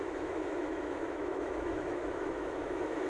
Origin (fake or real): fake